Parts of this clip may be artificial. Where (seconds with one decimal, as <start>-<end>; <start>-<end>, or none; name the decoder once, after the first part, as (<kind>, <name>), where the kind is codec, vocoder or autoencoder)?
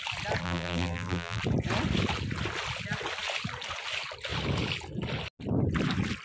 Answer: 0.4-1.4 (vocoder, BigVGAN v2)